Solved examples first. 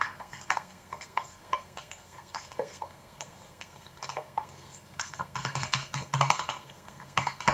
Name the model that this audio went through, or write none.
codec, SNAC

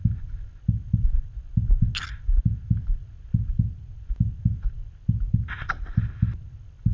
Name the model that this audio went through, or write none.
none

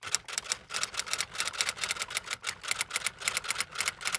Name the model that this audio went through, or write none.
none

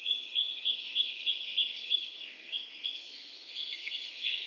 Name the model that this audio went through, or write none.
codec, SNAC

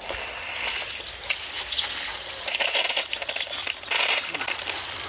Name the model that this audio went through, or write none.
none